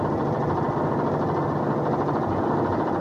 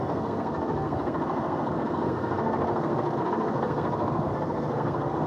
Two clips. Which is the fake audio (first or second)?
second